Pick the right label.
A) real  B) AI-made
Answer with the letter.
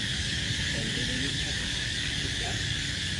B